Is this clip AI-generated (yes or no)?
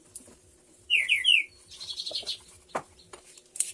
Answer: no